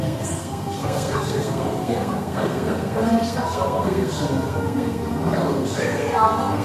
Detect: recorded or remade remade